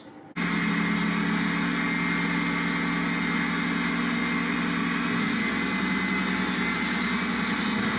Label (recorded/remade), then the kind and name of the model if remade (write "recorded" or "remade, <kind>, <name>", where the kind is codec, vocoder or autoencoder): recorded